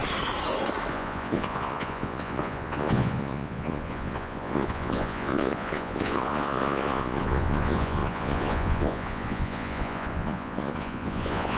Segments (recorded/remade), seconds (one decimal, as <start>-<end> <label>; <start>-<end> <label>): 0.0-0.9 recorded; 0.9-11.6 remade